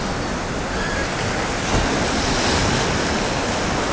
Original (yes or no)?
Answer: yes